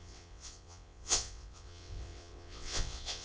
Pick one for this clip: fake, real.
fake